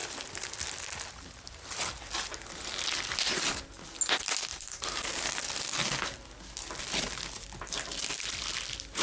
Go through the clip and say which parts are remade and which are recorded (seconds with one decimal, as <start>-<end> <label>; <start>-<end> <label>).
0.0-4.5 recorded; 4.5-5.1 remade; 5.1-9.0 recorded

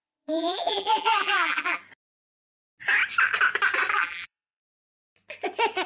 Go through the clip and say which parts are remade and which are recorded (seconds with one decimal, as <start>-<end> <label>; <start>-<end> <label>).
0.0-1.8 remade; 1.8-3.9 recorded; 3.9-4.6 remade; 4.6-5.9 recorded

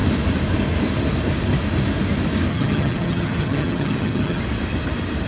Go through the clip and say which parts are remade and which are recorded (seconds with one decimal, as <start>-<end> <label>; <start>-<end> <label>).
0.0-2.5 recorded; 2.5-4.4 remade; 4.4-5.3 recorded

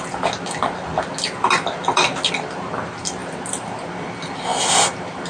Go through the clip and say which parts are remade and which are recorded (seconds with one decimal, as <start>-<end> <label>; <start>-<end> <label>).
0.0-5.3 recorded

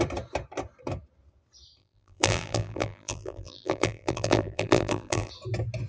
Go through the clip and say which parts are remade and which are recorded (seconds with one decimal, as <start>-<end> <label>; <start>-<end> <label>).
0.0-1.8 recorded; 1.8-5.3 remade; 5.3-5.9 recorded

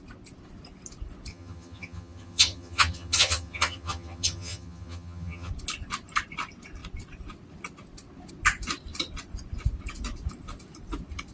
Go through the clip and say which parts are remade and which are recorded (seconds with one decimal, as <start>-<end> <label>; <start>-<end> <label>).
0.0-1.3 recorded; 1.3-5.5 remade; 5.5-11.3 recorded

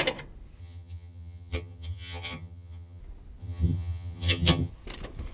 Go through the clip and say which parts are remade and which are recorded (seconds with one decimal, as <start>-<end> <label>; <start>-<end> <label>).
0.0-0.6 recorded; 0.6-3.0 remade; 3.0-3.4 recorded; 3.4-4.7 remade; 4.7-5.3 recorded